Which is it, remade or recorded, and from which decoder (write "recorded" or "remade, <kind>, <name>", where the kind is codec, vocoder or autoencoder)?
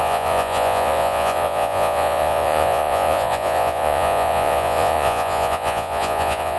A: remade, vocoder, Vocos